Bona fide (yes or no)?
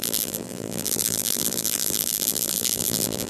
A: no